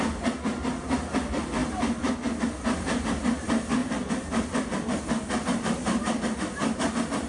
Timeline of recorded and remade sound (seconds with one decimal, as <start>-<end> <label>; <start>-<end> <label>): 0.0-7.3 recorded